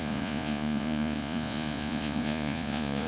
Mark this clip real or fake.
fake